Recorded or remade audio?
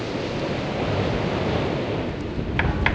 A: recorded